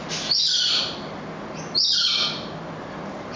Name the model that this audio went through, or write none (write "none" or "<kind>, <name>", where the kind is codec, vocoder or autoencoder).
none